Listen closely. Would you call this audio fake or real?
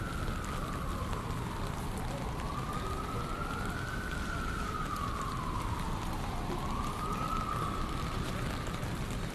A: real